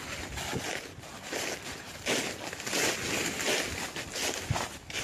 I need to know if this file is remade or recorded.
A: recorded